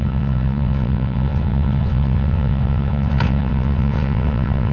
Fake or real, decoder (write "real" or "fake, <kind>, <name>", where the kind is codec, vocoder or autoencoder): fake, vocoder, WaveNeXt